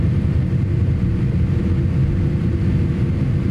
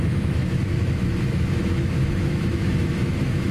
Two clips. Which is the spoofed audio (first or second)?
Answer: second